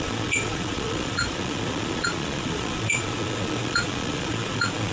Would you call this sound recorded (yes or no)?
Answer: no